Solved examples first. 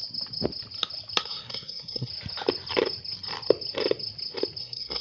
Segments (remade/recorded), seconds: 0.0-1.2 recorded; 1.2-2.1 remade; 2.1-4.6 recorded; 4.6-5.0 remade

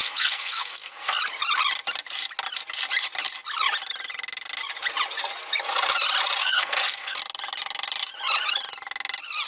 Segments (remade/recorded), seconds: 0.0-1.2 remade; 1.2-6.4 recorded; 6.4-7.2 remade; 7.2-9.5 recorded